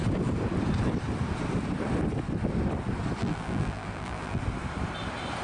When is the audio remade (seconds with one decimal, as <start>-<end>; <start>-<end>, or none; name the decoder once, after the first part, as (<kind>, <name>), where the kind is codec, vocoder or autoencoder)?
3.2-4.4 (vocoder, BigVGAN v2)